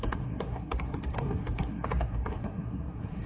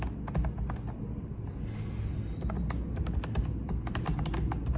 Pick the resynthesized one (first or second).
first